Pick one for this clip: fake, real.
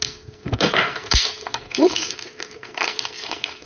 fake